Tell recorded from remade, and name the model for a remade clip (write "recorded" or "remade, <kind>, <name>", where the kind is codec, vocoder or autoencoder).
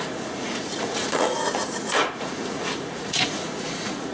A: remade, vocoder, Vocos